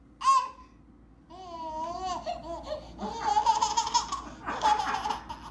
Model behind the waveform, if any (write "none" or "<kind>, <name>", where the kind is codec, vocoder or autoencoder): none